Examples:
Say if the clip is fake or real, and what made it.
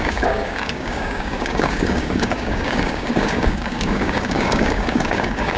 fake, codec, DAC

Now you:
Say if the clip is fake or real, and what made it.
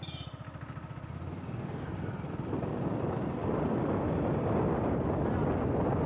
real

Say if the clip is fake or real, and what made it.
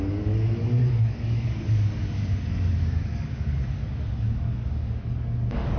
fake, codec, DAC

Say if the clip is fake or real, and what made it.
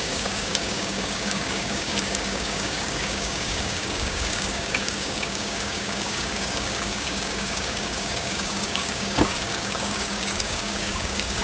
fake, codec, DAC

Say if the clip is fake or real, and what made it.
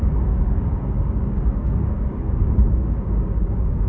fake, codec, DAC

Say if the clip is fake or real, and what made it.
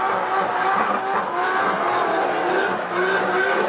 real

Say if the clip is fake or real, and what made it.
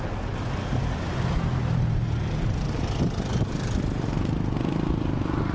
real